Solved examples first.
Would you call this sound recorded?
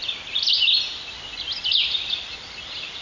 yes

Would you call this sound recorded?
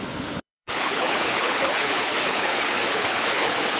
no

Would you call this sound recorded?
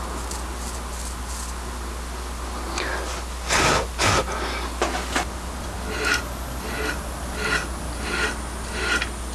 yes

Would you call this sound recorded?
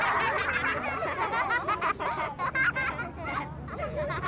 yes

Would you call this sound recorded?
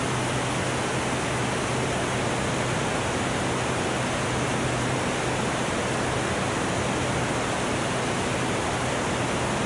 yes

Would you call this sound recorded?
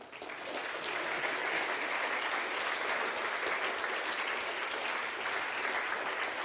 yes